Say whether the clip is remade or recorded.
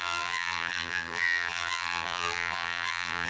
remade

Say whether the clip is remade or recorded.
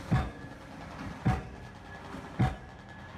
recorded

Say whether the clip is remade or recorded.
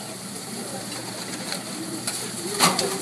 remade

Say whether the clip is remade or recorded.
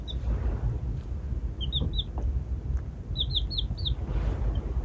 recorded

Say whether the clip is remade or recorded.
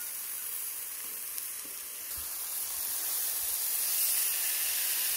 recorded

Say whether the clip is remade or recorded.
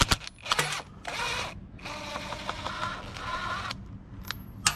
recorded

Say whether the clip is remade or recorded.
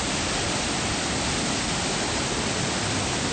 recorded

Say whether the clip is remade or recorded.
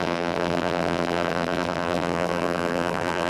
remade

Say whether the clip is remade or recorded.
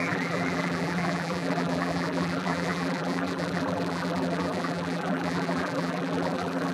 remade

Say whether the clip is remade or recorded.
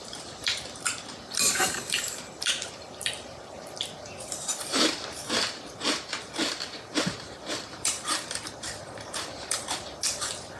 remade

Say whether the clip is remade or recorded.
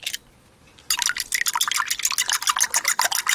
recorded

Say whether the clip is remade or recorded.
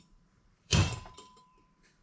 remade